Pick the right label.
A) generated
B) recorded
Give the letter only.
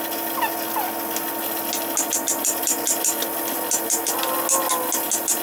B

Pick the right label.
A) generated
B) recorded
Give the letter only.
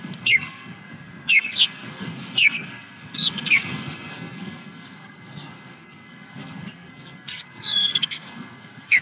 A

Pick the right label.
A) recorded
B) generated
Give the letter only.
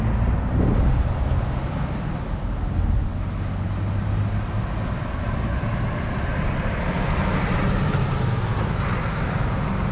A